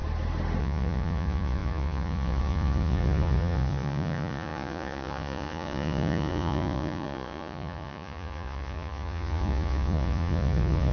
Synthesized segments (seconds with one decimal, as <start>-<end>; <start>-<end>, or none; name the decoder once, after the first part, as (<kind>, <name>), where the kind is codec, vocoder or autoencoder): 0.6-10.9 (vocoder, Vocos)